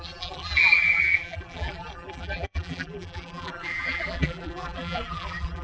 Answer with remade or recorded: remade